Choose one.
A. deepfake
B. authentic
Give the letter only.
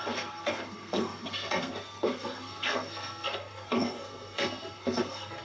A